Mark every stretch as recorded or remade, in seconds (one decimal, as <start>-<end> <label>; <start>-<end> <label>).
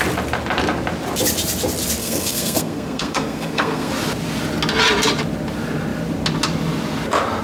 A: 0.0-2.0 recorded; 2.0-3.9 remade; 3.9-7.4 recorded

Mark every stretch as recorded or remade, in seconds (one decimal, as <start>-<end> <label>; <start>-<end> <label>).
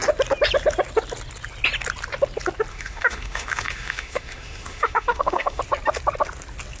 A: 0.0-2.7 recorded; 2.7-5.6 remade; 5.6-6.8 recorded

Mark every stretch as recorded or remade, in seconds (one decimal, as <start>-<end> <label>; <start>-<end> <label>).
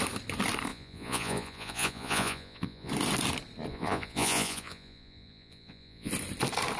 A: 0.0-0.7 recorded; 0.7-2.9 remade; 2.9-3.7 recorded; 3.7-6.1 remade; 6.1-6.8 recorded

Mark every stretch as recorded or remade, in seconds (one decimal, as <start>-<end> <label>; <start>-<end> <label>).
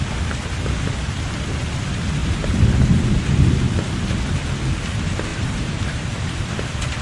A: 0.0-5.3 recorded; 5.3-6.5 remade; 6.5-7.0 recorded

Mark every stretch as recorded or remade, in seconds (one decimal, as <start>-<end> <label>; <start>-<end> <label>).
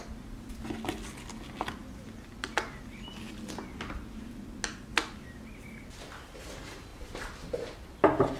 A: 0.0-8.4 recorded